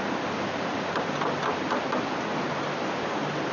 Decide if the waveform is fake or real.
real